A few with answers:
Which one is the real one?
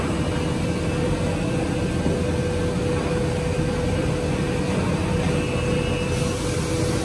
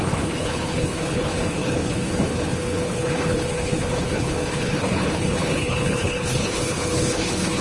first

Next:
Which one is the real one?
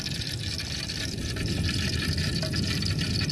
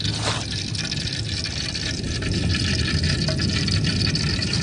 second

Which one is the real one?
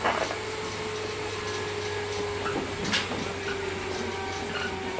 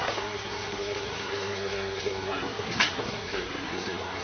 first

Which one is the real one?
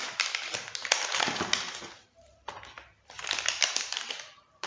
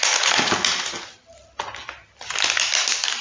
second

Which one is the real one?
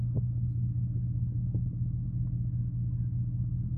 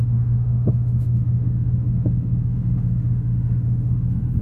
first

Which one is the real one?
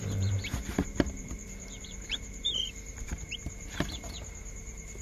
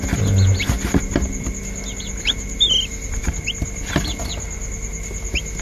second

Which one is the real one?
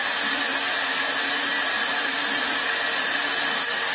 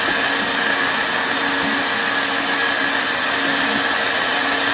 second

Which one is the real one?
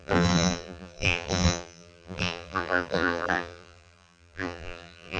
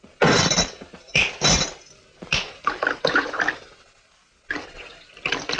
second